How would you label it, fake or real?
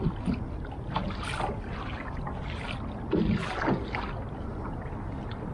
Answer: real